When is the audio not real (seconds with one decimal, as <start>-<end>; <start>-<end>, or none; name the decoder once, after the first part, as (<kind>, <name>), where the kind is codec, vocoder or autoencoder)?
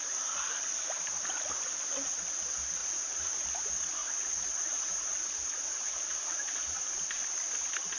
2.8-3.3 (vocoder, Vocos); 4.0-6.9